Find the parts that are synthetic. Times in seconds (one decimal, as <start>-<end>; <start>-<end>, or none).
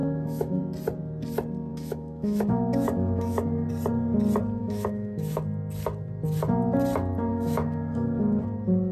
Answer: 0.0-0.6; 1.7-3.7; 4.6-5.4; 7.3-8.4